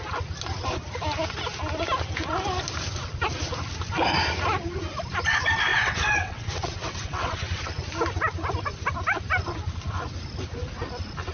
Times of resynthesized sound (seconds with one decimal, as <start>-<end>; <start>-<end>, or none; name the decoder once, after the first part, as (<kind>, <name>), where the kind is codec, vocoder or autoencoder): 5.7-7.7 (vocoder, WaveNeXt)